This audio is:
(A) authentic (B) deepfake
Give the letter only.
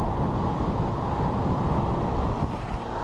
A